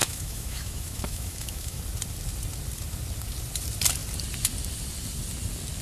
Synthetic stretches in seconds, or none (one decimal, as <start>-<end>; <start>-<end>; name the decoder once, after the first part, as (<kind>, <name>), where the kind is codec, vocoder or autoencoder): 0.0-1.8 (autoencoder, DAC-VAE)